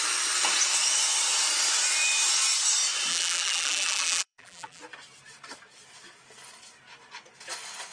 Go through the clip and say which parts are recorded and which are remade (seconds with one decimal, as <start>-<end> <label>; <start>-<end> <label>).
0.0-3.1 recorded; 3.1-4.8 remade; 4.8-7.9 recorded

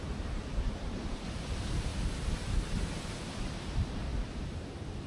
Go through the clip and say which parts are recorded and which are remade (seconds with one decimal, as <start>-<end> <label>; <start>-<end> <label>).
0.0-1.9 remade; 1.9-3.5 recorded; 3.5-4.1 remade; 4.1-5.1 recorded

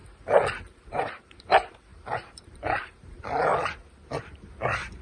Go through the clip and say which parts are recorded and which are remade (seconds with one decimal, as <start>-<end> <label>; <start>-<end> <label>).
0.0-0.7 recorded; 0.7-3.5 remade; 3.5-4.2 recorded; 4.2-5.0 remade

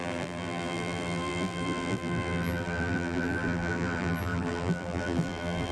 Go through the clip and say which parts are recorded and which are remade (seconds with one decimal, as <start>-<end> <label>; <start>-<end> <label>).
0.0-5.7 remade

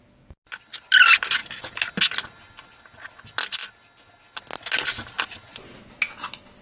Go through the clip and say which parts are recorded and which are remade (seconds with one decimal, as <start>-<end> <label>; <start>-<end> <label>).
0.0-6.6 recorded

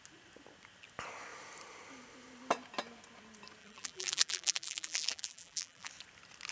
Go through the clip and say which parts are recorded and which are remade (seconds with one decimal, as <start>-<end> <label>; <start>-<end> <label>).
0.0-3.6 recorded; 3.6-5.9 remade; 5.9-6.5 recorded